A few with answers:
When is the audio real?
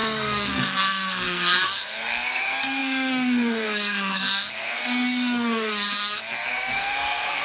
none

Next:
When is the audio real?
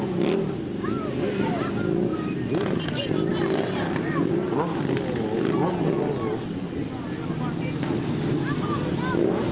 0.0-9.5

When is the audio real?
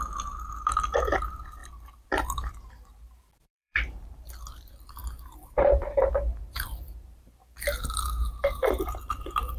none